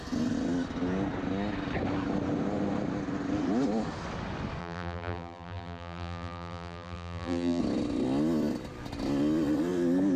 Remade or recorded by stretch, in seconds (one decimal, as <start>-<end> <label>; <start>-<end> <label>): 0.0-4.6 recorded; 4.6-7.6 remade; 7.6-10.2 recorded